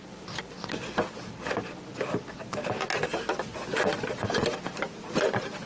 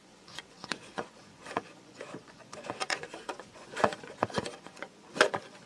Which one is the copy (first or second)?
second